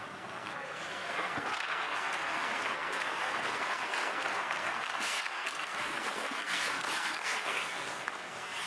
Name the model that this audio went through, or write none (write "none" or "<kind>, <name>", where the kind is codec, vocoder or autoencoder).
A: codec, SNAC